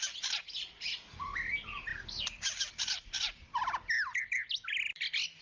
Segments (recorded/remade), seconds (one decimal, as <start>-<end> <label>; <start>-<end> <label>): 0.0-5.4 recorded